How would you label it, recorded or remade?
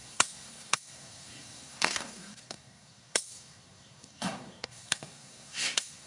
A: remade